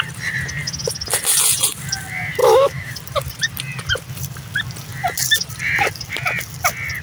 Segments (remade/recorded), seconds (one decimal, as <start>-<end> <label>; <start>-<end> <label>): 0.0-2.4 recorded; 2.4-2.9 remade; 2.9-7.0 recorded